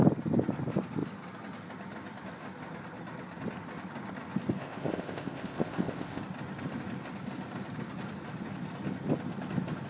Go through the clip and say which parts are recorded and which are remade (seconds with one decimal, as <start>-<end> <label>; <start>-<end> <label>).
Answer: 0.0-4.6 recorded; 4.6-6.2 remade; 6.2-9.9 recorded